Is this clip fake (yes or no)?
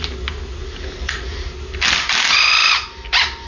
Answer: no